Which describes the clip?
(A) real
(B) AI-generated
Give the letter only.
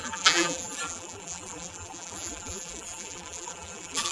B